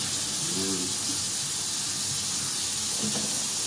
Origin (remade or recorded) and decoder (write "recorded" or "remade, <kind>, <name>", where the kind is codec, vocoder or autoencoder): recorded